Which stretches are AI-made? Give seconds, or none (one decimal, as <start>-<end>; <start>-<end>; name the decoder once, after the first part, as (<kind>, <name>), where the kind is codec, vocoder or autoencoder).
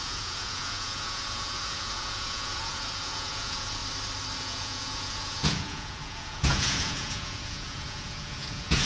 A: 0.0-3.8 (vocoder, Vocos); 4.4-8.9